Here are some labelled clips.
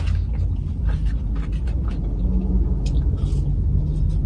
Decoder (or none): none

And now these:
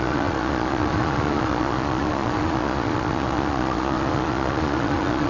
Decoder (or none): vocoder, Vocos